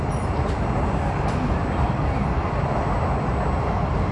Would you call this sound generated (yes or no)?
no